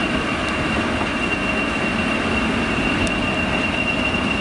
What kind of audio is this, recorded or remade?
recorded